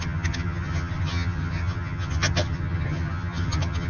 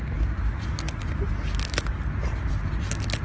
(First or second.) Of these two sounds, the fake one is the first